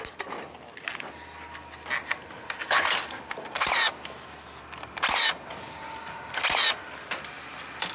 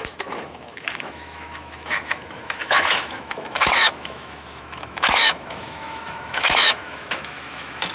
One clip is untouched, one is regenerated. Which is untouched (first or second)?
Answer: first